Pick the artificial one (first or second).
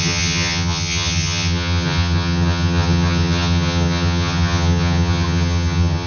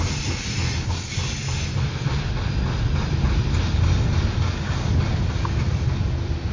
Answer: first